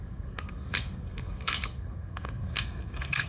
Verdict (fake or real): fake